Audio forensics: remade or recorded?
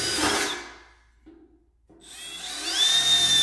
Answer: recorded